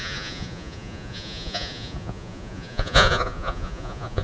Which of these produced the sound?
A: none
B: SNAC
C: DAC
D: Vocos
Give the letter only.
D